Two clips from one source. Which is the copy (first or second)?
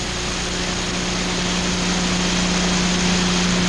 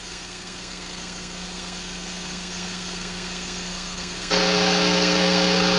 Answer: second